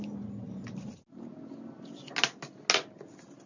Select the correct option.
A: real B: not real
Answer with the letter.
A